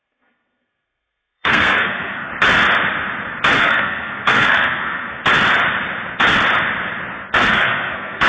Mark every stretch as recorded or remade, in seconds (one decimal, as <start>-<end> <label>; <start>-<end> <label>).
0.0-2.3 remade; 2.3-3.6 recorded; 3.6-5.2 remade; 5.2-7.5 recorded; 7.5-8.3 remade